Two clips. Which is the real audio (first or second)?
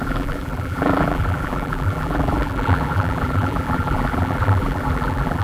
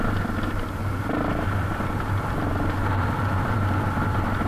second